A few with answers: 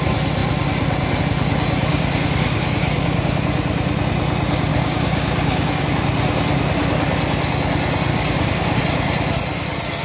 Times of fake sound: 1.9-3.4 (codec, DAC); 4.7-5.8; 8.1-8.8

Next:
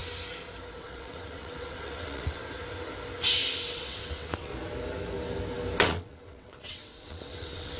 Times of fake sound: 0.8-2.4 (vocoder, WaveNeXt); 3.6-4.5; 5.8-7.8